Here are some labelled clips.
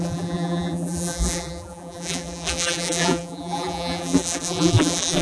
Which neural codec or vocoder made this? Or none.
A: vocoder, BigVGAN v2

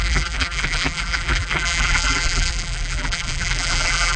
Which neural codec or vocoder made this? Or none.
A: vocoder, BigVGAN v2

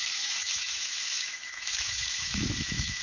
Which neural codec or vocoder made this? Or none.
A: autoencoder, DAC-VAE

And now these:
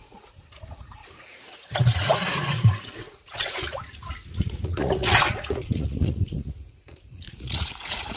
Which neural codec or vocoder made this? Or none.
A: vocoder, Vocos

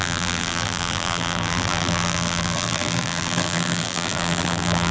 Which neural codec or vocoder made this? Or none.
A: vocoder, BigVGAN v2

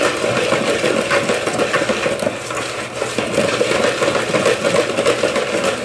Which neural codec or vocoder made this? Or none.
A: none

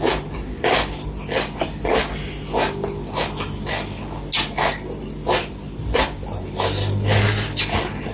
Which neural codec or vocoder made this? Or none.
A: none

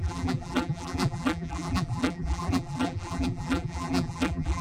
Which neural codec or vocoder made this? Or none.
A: vocoder, BigVGAN v2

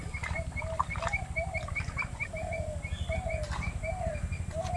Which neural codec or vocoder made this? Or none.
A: none